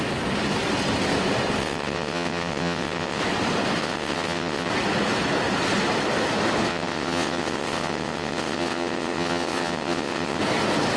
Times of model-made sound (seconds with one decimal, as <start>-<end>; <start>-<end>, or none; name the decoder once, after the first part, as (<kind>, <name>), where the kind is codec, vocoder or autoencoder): 1.6-3.2 (vocoder, WaveNeXt); 3.8-4.7; 6.7-10.4